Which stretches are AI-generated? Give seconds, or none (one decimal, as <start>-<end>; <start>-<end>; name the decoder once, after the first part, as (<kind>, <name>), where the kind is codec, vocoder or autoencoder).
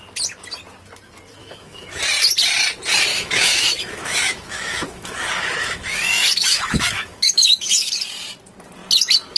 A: 1.4-2.0 (autoencoder, DAC-VAE); 3.1-7.9